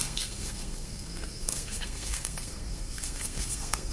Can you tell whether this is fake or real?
fake